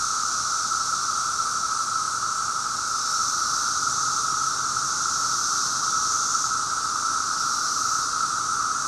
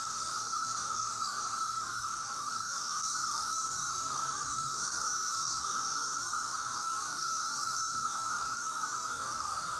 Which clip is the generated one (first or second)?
second